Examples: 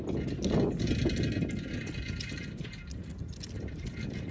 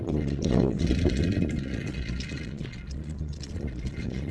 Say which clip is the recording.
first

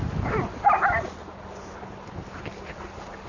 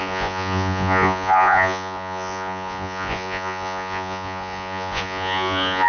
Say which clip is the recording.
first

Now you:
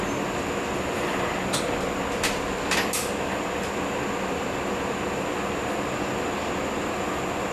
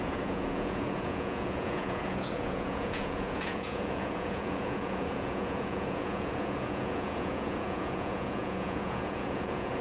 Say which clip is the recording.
first